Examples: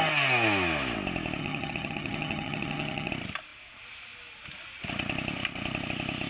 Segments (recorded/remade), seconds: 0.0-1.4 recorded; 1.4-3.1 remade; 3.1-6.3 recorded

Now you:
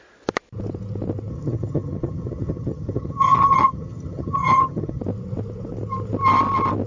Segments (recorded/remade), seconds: 0.0-1.3 recorded; 1.3-5.0 remade; 5.0-6.9 recorded

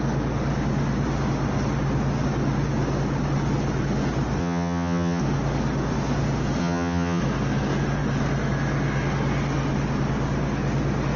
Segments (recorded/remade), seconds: 0.0-4.4 recorded; 4.4-5.2 remade; 5.2-6.6 recorded; 6.6-7.2 remade; 7.2-11.2 recorded

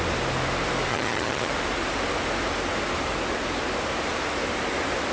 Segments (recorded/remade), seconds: 0.0-0.9 recorded; 0.9-1.5 remade; 1.5-5.1 recorded